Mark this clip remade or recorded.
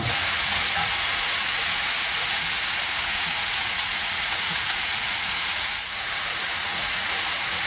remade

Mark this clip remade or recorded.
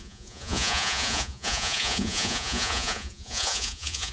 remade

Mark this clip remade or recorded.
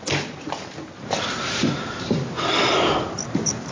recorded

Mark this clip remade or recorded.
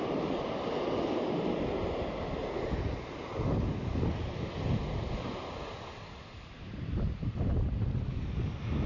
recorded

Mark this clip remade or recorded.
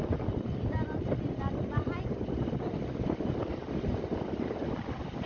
recorded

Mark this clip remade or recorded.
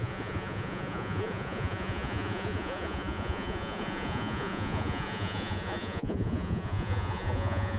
remade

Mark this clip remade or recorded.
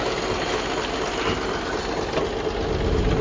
recorded